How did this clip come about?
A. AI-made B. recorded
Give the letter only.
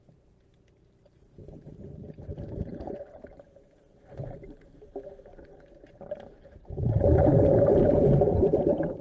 A